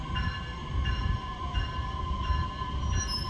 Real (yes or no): yes